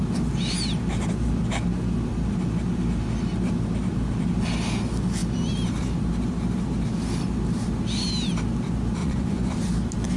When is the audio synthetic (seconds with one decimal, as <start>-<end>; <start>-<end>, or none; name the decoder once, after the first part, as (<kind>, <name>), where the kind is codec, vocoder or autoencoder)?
9.0-9.5 (vocoder, Vocos)